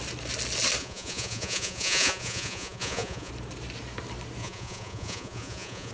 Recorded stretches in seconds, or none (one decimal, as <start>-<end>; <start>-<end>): 0.0-0.8; 3.3-4.4